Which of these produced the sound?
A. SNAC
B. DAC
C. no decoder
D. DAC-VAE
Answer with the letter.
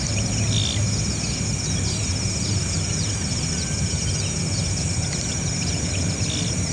C